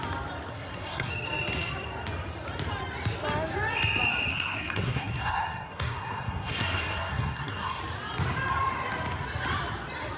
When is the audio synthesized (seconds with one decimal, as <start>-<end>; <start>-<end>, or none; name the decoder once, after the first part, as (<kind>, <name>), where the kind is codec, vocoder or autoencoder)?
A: 0.5-1.1 (codec, SNAC); 4.3-7.8